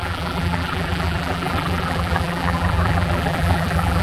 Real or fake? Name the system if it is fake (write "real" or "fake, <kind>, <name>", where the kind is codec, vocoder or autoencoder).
fake, vocoder, BigVGAN v2